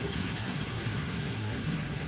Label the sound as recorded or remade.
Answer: remade